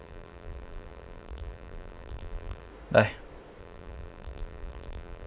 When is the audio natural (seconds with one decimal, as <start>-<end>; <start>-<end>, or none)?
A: 2.7-3.6